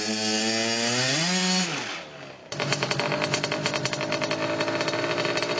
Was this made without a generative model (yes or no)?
yes